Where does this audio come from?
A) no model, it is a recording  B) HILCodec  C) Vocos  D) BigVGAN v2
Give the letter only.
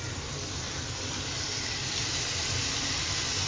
A